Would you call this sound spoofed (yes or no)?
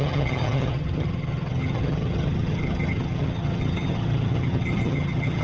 yes